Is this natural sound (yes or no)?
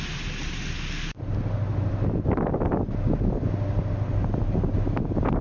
yes